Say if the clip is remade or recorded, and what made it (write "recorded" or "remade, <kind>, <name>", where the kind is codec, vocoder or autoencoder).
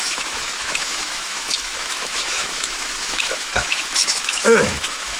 remade, autoencoder, DAC-VAE